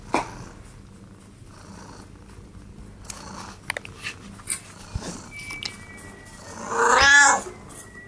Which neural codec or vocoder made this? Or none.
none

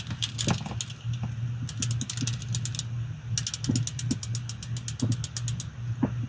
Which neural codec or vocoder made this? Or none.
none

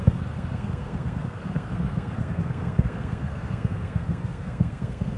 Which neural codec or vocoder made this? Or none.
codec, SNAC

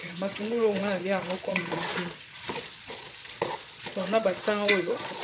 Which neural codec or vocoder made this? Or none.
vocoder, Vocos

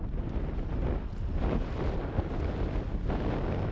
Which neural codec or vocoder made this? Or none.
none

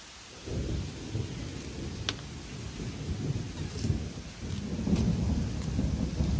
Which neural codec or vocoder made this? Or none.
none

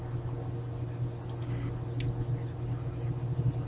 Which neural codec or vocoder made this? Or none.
none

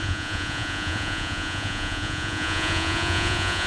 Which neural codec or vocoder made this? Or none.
vocoder, Vocos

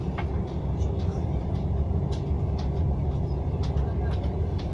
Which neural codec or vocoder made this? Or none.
none